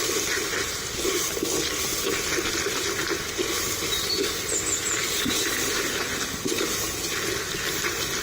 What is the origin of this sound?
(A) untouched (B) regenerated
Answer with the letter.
A